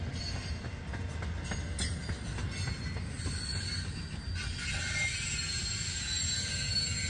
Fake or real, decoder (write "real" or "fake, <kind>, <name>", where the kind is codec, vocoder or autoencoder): real